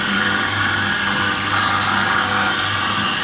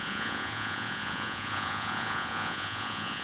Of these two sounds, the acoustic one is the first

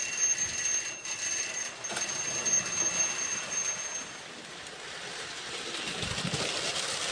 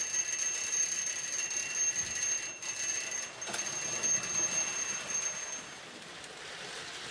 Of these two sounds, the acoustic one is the second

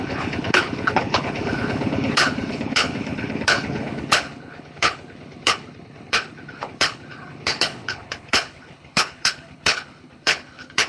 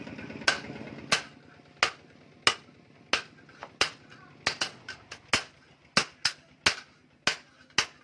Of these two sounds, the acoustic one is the second